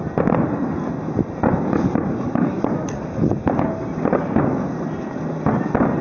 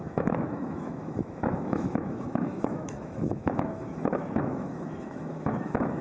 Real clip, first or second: first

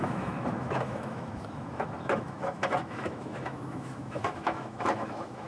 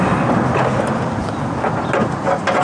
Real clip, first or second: second